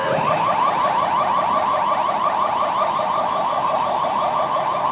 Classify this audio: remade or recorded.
recorded